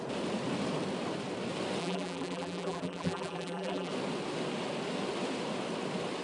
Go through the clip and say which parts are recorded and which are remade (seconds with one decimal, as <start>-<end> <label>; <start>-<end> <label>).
0.0-1.8 recorded; 1.8-3.9 remade; 3.9-6.2 recorded